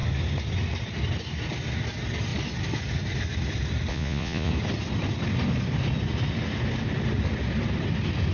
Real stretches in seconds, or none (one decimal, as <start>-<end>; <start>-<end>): 0.0-3.9; 4.5-8.3